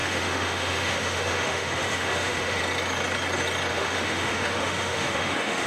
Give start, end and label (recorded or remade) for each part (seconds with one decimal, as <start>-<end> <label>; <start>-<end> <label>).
0.0-2.6 remade; 2.6-3.7 recorded; 3.7-5.7 remade